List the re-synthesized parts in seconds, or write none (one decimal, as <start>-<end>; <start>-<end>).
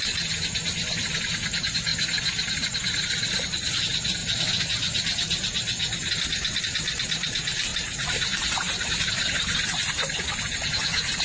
none